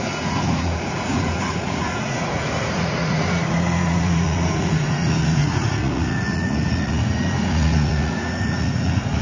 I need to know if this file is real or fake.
fake